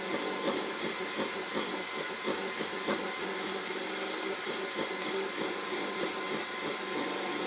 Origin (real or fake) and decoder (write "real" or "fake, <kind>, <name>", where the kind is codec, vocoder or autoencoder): real